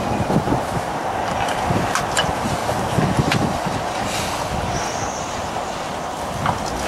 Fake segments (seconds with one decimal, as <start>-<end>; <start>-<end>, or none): none